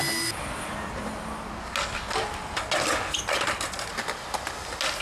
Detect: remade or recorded recorded